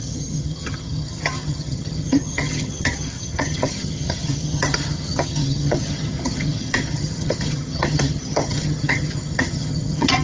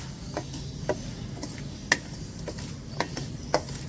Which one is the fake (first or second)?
first